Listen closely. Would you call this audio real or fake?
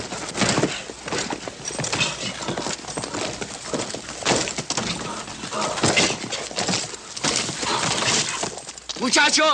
real